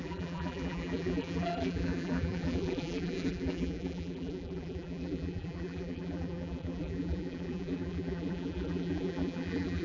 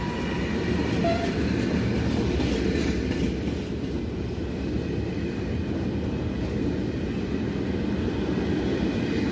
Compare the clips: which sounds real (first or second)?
second